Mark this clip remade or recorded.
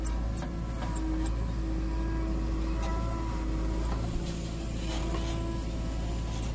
recorded